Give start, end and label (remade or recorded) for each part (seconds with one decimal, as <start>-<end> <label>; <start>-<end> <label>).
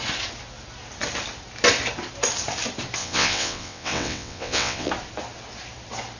0.0-3.0 recorded; 3.0-4.9 remade; 4.9-6.2 recorded